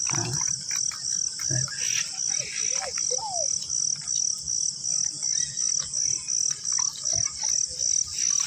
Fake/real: real